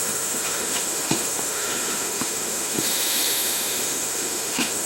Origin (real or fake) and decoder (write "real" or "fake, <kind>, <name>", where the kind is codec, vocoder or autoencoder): fake, autoencoder, DAC-VAE